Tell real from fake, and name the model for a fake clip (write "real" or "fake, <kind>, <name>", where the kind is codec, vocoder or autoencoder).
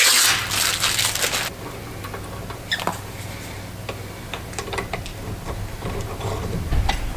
real